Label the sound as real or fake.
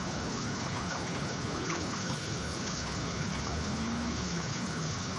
fake